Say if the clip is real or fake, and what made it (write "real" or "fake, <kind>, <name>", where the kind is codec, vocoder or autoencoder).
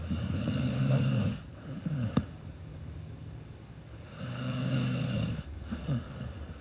fake, codec, DAC